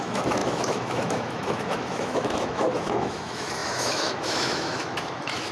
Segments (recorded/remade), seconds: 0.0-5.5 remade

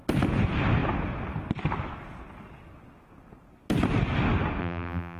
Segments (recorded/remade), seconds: 0.0-4.6 recorded; 4.6-5.2 remade

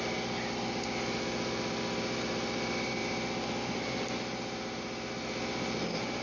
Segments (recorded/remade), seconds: 0.0-6.2 recorded

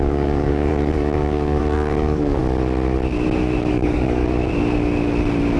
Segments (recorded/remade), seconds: 0.0-2.4 remade; 2.4-3.7 recorded; 3.7-4.2 remade; 4.2-5.6 recorded